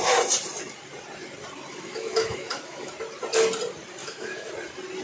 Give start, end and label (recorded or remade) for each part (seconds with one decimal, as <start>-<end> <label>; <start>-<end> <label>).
0.0-1.7 recorded; 1.7-2.9 remade; 2.9-4.0 recorded; 4.0-4.5 remade; 4.5-5.0 recorded